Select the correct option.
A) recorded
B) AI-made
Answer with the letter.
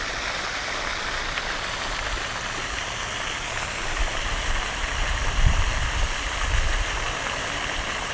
A